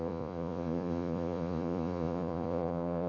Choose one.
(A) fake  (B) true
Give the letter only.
A